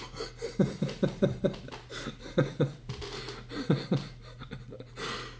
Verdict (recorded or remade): recorded